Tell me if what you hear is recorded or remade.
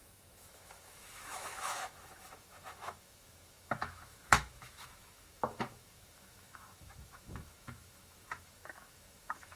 remade